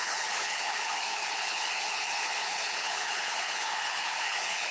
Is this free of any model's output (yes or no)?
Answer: no